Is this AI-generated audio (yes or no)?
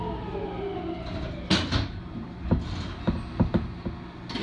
no